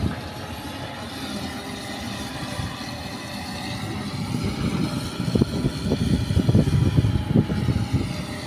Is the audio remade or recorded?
recorded